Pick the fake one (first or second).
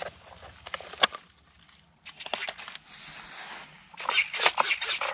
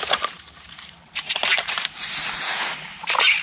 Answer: second